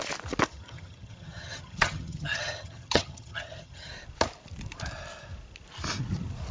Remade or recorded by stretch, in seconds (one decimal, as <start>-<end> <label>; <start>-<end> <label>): 0.0-0.5 recorded; 0.5-3.9 remade; 3.9-6.5 recorded